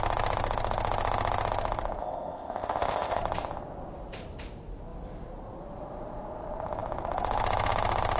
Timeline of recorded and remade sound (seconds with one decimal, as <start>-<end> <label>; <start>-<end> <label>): 0.0-2.0 recorded; 2.0-3.2 remade; 3.2-8.2 recorded